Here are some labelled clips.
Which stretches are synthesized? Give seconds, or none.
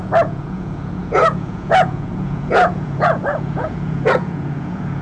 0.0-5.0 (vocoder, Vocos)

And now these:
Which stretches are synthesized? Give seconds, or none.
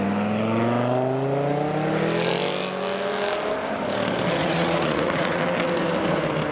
4.4-5.4 (vocoder, Vocos)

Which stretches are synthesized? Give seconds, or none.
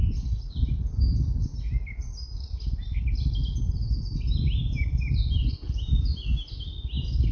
none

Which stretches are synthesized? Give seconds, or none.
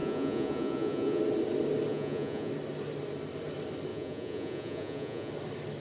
0.0-1.2 (vocoder, Vocos); 1.9-2.5; 3.9-5.3